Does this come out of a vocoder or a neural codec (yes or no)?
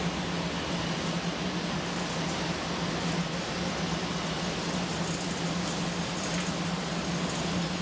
no